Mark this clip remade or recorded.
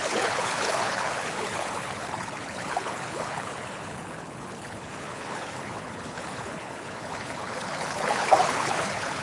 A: remade